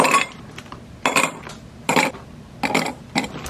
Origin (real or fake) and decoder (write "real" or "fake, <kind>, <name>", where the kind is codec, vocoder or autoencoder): real